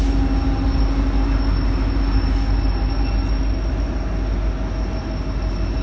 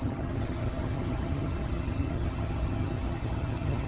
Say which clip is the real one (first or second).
first